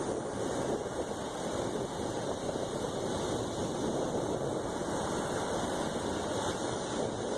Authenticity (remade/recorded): recorded